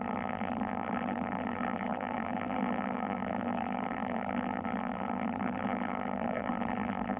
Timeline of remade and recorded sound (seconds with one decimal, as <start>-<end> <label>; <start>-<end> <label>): 0.0-7.2 remade

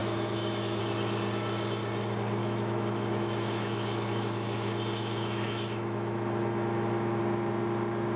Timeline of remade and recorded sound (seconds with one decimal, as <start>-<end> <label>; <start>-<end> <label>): 0.0-0.8 remade; 0.8-2.4 recorded; 2.4-7.2 remade; 7.2-8.2 recorded

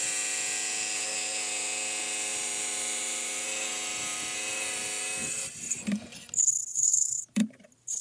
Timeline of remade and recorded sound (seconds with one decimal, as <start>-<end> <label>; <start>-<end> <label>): 0.0-2.3 recorded; 2.3-3.3 remade; 3.3-6.7 recorded; 6.7-8.0 remade

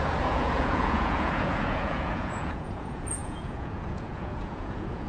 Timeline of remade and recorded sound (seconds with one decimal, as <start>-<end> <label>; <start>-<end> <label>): 0.0-5.1 remade

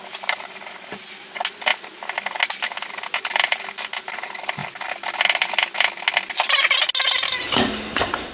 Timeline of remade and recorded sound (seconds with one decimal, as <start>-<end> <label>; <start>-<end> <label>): 0.0-8.3 recorded

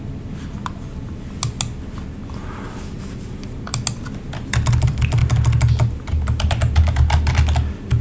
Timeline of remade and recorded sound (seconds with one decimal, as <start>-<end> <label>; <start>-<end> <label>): 0.0-8.0 recorded